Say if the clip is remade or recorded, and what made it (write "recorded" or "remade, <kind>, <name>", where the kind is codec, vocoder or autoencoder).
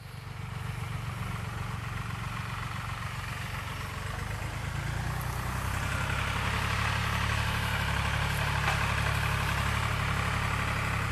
recorded